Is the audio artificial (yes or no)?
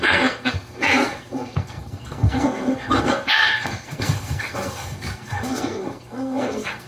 yes